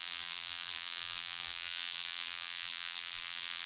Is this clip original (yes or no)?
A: no